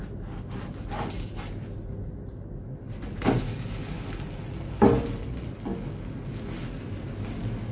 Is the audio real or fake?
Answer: real